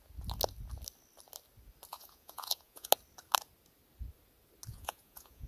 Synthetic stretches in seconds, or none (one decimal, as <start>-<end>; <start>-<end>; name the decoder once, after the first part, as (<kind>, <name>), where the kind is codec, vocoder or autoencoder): 1.9-2.9 (vocoder, Vocos); 4.7-5.5